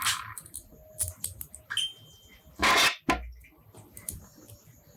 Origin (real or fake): real